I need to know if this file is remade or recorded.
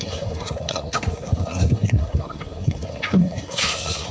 remade